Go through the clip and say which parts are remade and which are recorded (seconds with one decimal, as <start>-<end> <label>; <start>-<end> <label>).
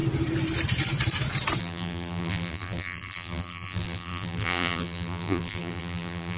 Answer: 0.0-1.6 recorded; 1.6-6.4 remade